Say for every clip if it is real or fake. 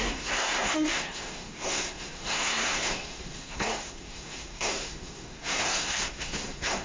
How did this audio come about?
fake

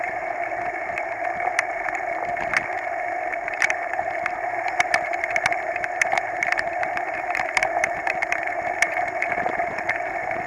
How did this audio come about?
fake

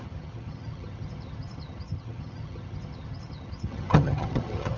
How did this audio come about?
fake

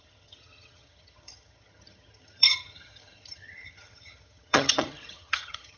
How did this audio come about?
fake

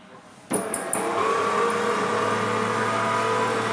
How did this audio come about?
real